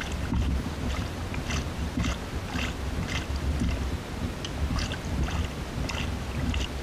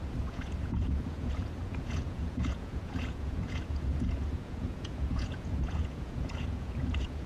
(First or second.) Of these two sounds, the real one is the first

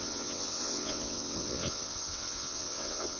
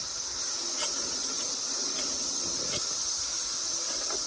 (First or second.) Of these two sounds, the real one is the second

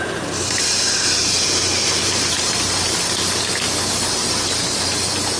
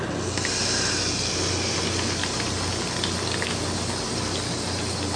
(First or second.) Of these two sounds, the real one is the second